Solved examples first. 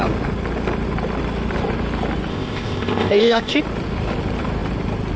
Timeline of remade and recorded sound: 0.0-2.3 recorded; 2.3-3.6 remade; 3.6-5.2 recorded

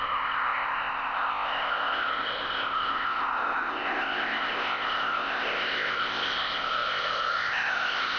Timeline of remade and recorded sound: 0.0-8.2 remade